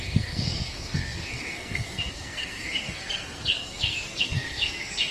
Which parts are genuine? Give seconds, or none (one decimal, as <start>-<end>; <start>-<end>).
none